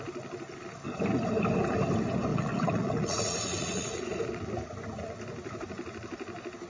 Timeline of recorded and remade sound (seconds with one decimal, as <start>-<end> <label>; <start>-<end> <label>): 0.0-2.3 recorded; 2.3-4.2 remade; 4.2-6.7 recorded

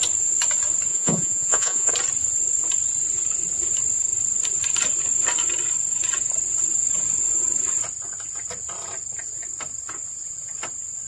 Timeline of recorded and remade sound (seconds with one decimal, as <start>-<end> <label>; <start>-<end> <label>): 0.0-0.9 recorded; 0.9-1.9 remade; 1.9-11.1 recorded

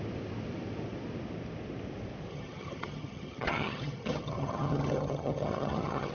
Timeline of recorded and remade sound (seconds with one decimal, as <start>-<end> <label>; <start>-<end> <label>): 0.0-2.3 recorded; 2.3-6.1 remade

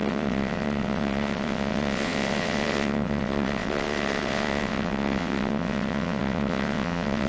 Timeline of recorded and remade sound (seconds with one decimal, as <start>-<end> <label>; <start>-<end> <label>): 0.0-7.3 remade

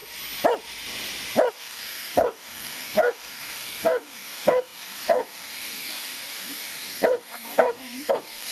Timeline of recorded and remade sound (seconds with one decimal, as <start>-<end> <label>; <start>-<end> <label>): 0.0-1.5 recorded; 1.5-8.5 remade

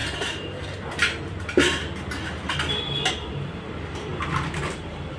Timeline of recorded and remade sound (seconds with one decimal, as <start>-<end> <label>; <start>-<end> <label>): 0.0-5.2 recorded